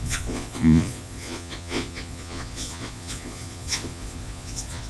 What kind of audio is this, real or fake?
fake